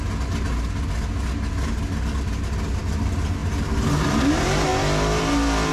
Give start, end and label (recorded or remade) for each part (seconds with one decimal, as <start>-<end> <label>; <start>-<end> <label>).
0.0-5.7 recorded